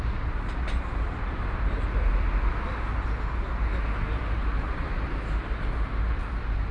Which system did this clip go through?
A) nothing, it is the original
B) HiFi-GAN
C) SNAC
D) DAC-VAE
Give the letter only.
A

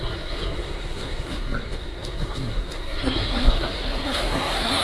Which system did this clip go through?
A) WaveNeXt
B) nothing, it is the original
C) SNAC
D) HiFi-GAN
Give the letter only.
C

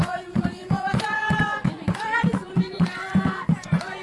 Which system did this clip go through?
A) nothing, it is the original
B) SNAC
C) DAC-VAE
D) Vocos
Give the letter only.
D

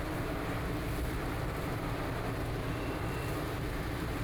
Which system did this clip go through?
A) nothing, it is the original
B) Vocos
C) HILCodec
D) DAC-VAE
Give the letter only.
A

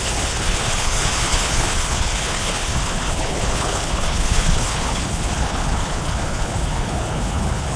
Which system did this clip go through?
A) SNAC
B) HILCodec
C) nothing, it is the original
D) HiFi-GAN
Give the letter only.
B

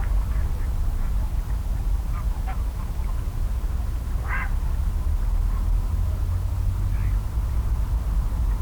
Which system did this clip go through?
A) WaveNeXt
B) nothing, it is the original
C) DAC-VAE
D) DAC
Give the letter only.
B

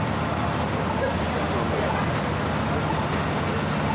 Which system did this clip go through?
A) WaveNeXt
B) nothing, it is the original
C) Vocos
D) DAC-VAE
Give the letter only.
B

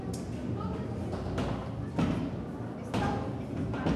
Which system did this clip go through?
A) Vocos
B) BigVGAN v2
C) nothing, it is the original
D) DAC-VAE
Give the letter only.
C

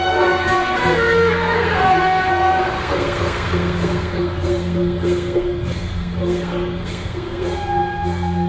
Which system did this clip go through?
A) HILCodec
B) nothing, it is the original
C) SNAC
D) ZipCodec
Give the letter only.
C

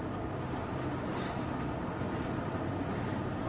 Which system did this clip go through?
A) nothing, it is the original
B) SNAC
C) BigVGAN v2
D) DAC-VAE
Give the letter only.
A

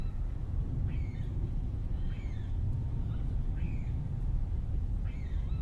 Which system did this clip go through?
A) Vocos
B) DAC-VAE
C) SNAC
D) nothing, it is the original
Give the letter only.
A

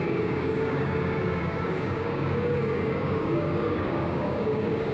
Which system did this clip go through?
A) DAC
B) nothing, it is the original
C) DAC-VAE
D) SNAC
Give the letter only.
A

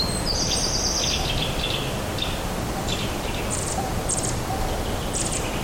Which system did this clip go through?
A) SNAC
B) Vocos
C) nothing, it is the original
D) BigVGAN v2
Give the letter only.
D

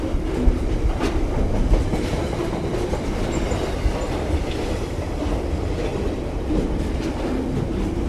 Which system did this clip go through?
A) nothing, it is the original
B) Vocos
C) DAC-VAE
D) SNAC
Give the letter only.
A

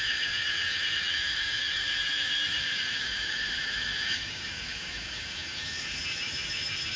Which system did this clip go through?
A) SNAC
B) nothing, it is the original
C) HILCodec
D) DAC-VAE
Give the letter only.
D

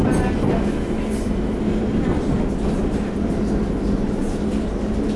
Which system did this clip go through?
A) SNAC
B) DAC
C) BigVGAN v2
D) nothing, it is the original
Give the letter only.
D